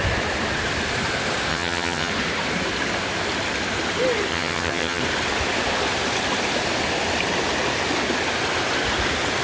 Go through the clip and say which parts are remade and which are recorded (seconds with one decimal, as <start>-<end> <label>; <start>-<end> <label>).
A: 0.0-1.5 recorded; 1.5-2.1 remade; 2.1-4.3 recorded; 4.3-5.0 remade; 5.0-9.4 recorded